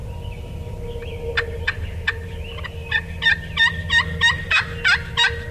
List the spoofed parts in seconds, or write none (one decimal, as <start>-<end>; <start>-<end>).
none